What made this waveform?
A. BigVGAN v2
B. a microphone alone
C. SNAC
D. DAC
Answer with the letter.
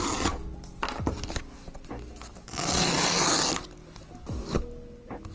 B